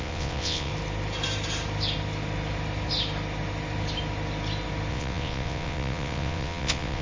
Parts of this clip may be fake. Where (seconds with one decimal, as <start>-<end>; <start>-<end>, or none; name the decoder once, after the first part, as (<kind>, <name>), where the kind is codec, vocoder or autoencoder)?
0.0-0.7 (vocoder, WaveNeXt); 4.9-7.0